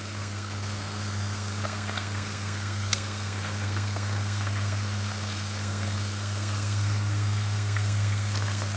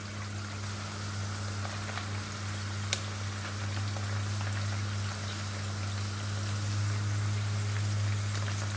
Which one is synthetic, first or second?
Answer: first